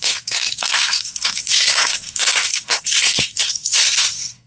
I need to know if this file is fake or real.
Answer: fake